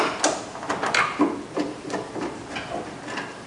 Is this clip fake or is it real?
real